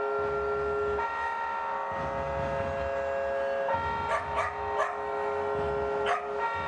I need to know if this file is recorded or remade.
recorded